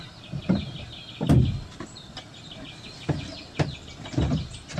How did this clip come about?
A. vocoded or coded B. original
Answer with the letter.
B